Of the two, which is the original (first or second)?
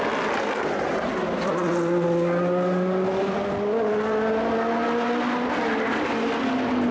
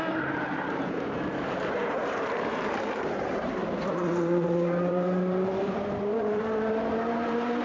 first